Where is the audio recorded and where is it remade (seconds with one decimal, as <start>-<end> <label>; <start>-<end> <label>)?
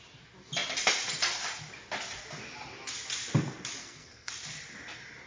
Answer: 0.0-3.8 recorded; 3.8-4.3 remade; 4.3-5.3 recorded